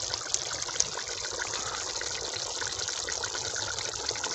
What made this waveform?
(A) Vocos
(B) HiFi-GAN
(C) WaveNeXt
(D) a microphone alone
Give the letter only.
D